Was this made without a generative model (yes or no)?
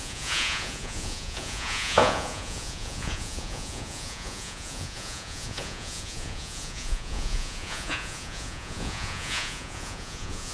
no